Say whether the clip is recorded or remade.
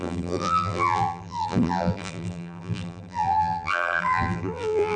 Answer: remade